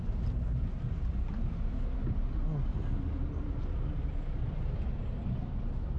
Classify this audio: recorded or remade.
recorded